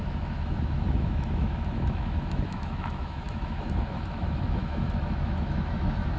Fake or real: fake